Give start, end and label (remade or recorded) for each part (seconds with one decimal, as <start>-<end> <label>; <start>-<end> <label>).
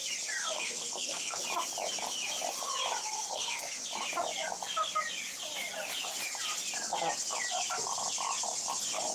0.0-0.4 recorded; 0.4-1.4 remade; 1.4-3.1 recorded; 3.1-3.7 remade; 3.7-9.1 recorded